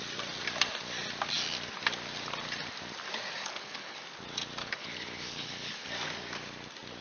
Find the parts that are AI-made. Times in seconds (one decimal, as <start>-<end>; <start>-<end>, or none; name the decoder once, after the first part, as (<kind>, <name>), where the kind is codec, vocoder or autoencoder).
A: 3.4-4.0 (codec, HILCodec); 4.6-5.9